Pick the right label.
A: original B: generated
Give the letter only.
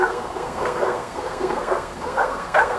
B